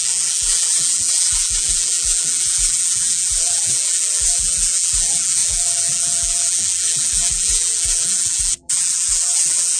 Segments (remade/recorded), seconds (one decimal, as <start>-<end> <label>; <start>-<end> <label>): 0.0-9.8 remade